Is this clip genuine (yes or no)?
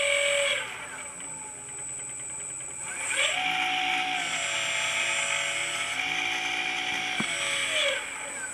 yes